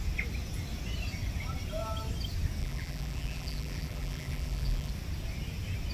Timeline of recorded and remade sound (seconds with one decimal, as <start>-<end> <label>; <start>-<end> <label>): 0.0-2.6 recorded; 2.6-4.9 remade; 4.9-5.9 recorded